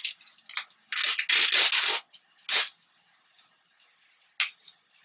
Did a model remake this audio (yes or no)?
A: no